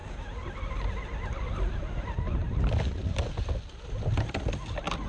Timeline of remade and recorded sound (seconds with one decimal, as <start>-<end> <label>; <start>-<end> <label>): 0.0-5.1 recorded